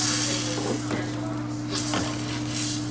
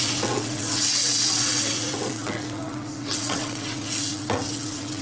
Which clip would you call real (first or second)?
first